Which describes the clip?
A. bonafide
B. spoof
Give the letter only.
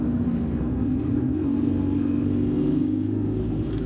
B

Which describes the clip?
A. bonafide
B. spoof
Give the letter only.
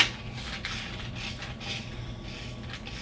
A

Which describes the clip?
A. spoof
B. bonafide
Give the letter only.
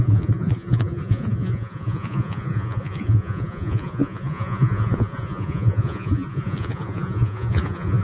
A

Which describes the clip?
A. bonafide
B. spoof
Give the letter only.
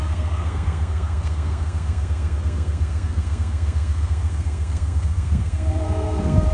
B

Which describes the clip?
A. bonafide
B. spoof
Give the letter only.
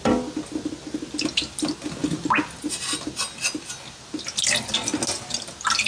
A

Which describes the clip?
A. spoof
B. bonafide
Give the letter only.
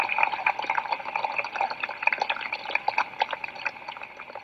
B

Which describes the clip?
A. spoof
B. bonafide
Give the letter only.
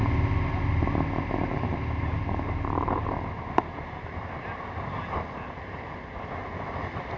B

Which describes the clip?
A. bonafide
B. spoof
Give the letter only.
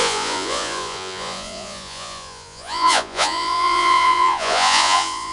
B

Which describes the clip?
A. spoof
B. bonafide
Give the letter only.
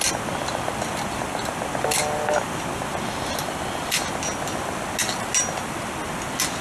B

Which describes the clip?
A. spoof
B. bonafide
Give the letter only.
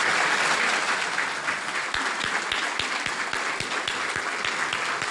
B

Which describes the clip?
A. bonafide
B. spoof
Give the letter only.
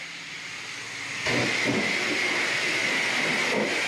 A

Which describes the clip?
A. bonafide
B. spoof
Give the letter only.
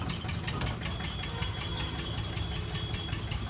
A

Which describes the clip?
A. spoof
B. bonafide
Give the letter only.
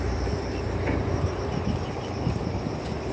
A